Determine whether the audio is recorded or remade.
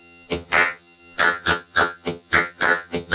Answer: remade